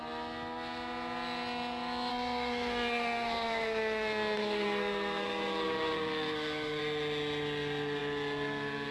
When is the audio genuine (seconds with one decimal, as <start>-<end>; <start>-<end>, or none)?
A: 0.0-2.1; 6.8-8.9

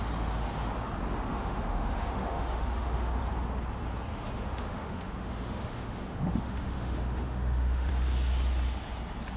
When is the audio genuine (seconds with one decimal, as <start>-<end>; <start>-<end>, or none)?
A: 0.0-1.3; 3.2-4.1; 7.9-9.4

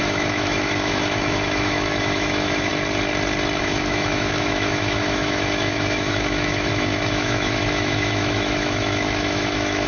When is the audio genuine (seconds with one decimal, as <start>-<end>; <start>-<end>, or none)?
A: 2.7-3.6

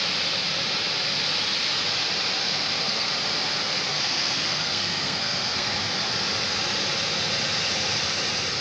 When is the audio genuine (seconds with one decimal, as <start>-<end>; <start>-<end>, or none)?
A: 0.0-2.4; 3.1-3.9; 5.8-8.6

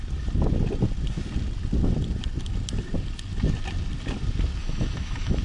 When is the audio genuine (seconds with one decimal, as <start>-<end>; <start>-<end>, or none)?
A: 0.0-4.6

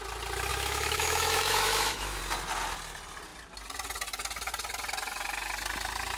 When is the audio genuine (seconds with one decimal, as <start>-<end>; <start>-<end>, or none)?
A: 0.0-0.5; 2.2-6.2

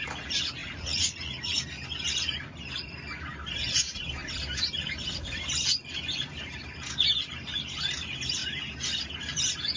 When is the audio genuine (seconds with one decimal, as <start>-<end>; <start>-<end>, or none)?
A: 0.0-0.6; 1.6-9.8

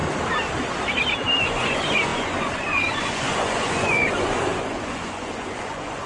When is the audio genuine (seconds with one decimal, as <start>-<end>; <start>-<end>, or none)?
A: 0.0-1.4